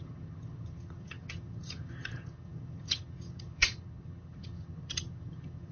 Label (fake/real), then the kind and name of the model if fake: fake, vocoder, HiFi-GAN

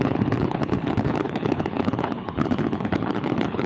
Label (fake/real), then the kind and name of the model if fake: fake, codec, HILCodec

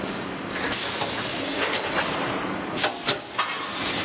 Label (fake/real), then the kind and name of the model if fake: real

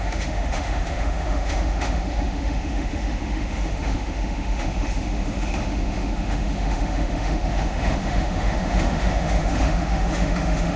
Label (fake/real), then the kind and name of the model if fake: fake, autoencoder, DAC-VAE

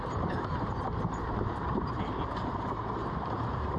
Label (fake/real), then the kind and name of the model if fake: fake, vocoder, BigVGAN v2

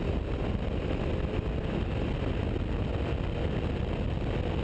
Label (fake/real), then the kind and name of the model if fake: real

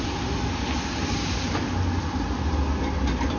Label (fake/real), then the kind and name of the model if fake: real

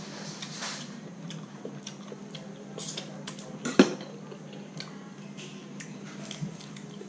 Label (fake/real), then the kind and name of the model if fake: real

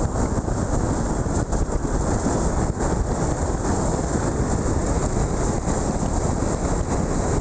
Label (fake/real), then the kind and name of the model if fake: real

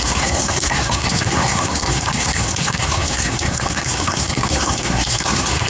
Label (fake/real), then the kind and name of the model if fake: fake, codec, SNAC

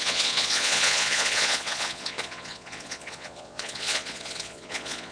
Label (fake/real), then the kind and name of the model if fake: fake, vocoder, Vocos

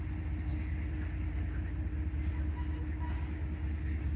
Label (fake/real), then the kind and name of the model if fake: real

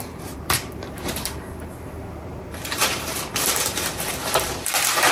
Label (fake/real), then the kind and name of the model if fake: fake, vocoder, BigVGAN v2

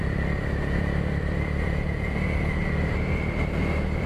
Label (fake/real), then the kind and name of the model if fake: fake, vocoder, BigVGAN v2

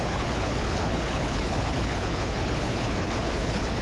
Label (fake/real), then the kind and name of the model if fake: fake, codec, HILCodec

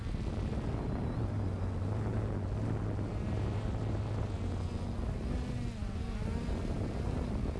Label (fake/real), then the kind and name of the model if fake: real